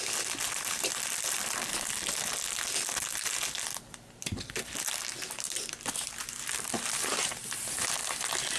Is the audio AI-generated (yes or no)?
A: no